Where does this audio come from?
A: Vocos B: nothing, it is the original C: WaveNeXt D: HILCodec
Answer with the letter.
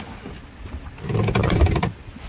B